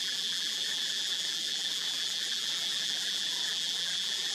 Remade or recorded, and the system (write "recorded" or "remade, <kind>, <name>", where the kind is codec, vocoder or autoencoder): remade, vocoder, BigVGAN v2